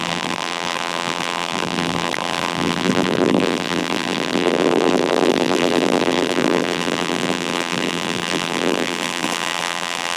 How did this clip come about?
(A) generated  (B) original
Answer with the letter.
A